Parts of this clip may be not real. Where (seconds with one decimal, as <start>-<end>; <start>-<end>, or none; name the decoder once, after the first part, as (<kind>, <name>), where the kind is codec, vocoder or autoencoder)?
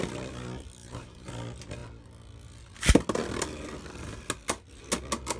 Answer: 0.8-1.3 (vocoder, BigVGAN v2)